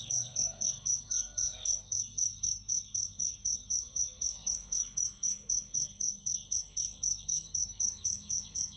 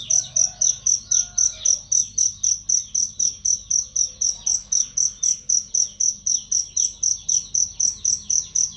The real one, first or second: second